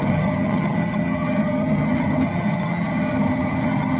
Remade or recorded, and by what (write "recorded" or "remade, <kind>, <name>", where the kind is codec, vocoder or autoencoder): remade, vocoder, HiFi-GAN